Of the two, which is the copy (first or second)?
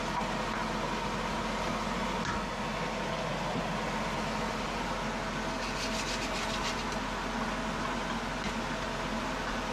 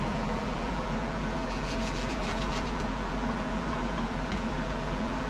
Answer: second